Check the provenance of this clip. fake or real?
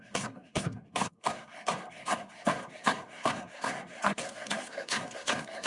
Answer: fake